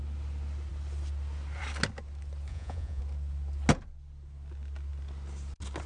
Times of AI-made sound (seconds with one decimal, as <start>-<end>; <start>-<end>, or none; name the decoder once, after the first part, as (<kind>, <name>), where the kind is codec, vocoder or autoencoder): 2.5-3.0 (vocoder, Vocos)